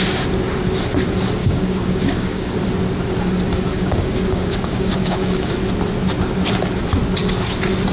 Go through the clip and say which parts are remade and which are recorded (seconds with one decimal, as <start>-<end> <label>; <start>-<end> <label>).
0.0-1.4 recorded; 1.4-2.5 remade; 2.5-3.7 recorded; 3.7-5.5 remade; 5.5-7.9 recorded